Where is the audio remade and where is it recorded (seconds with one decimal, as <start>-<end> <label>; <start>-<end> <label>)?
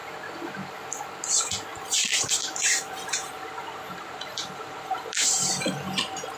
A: 0.0-0.5 remade; 0.5-1.7 recorded; 1.7-5.5 remade; 5.5-6.4 recorded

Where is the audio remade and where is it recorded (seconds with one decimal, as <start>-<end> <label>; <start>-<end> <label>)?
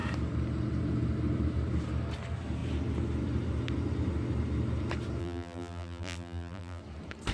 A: 0.0-5.2 recorded; 5.2-6.8 remade; 6.8-7.3 recorded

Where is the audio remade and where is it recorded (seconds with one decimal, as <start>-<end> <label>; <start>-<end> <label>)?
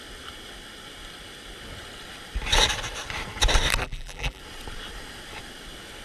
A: 0.0-3.8 recorded; 3.8-4.4 remade; 4.4-6.0 recorded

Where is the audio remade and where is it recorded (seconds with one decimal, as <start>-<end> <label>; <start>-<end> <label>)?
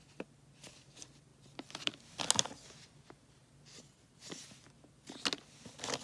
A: 0.0-1.3 recorded; 1.3-1.9 remade; 1.9-3.4 recorded; 3.4-4.5 remade; 4.5-6.0 recorded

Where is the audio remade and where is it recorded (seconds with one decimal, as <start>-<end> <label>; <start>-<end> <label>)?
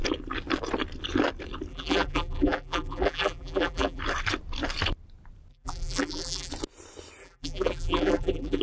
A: 0.0-1.7 recorded; 1.7-4.0 remade; 4.0-5.5 recorded; 5.5-6.5 remade; 6.5-7.2 recorded; 7.2-8.6 remade